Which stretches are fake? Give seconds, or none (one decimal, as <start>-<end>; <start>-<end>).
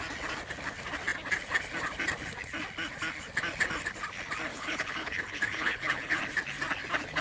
4.5-6.2